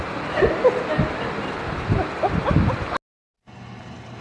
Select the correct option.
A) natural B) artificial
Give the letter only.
A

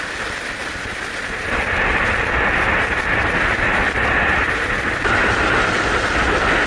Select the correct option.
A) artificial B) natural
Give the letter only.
B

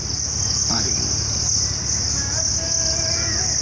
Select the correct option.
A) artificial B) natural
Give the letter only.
B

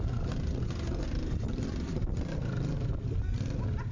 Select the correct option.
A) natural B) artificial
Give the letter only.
A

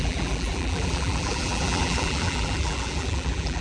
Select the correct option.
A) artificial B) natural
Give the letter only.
A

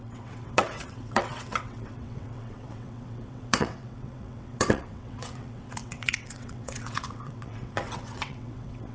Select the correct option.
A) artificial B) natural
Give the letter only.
A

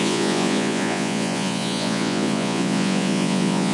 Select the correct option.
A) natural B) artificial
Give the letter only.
B